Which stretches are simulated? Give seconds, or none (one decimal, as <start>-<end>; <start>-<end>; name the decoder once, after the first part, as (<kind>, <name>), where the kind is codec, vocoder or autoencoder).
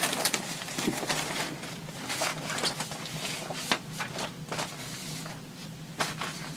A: none